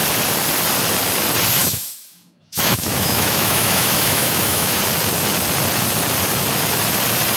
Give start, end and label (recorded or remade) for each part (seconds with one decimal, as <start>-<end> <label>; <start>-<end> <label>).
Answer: 0.0-1.6 recorded; 1.6-4.8 remade; 4.8-7.4 recorded